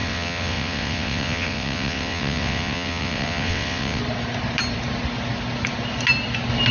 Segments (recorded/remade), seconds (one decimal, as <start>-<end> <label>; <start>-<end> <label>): 0.0-4.0 remade; 4.0-6.7 recorded